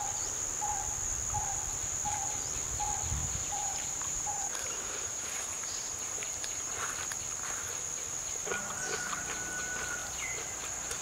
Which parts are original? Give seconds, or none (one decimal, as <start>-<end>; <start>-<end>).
0.0-3.2; 6.7-11.0